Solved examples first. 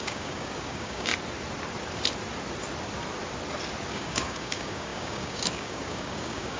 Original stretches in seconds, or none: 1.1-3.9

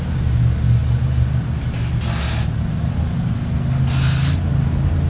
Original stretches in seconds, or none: 0.0-5.1

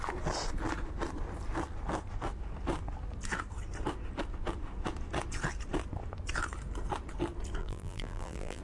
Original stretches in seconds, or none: 0.0-7.6

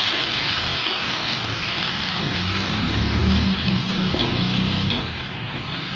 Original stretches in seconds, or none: none